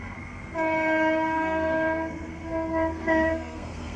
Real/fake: fake